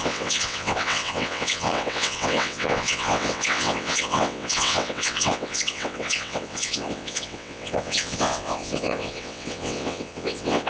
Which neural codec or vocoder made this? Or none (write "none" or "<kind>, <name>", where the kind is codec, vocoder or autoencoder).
vocoder, WaveNeXt